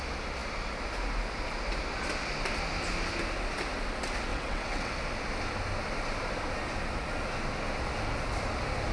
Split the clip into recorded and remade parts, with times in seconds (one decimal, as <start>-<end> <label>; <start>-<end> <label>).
0.0-4.3 recorded; 4.3-4.9 remade; 4.9-8.9 recorded

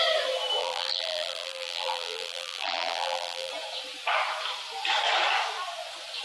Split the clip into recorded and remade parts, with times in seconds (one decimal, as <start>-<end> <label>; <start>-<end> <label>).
0.0-0.6 recorded; 0.6-3.5 remade; 3.5-6.2 recorded

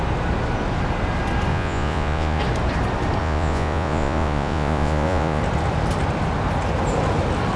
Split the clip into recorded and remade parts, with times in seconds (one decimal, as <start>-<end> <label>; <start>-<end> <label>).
0.0-1.5 recorded; 1.5-2.4 remade; 2.4-3.2 recorded; 3.2-5.4 remade; 5.4-7.6 recorded

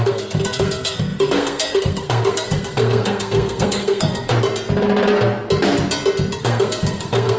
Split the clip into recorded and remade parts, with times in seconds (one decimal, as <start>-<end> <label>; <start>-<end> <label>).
0.0-4.3 remade; 4.3-6.4 recorded; 6.4-7.4 remade